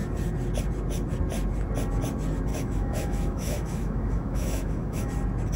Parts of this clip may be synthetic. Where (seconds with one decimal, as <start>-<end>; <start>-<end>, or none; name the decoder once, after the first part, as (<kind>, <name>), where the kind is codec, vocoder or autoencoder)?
2.5-5.1 (autoencoder, DAC-VAE)